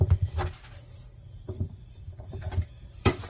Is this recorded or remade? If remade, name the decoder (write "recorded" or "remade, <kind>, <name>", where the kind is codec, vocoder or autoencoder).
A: remade, vocoder, BigVGAN v2